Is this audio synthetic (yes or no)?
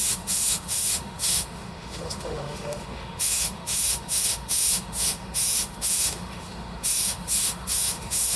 yes